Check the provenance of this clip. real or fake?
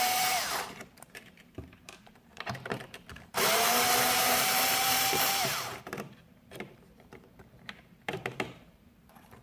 fake